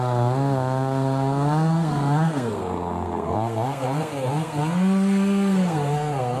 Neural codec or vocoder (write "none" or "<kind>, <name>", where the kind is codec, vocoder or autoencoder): codec, SNAC